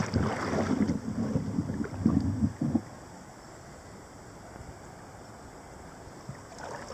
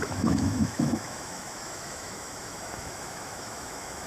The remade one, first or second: second